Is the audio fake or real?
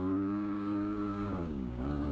fake